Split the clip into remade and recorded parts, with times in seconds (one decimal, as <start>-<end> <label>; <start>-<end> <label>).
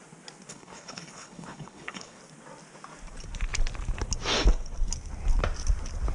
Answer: 0.0-0.5 recorded; 0.5-2.2 remade; 2.2-6.1 recorded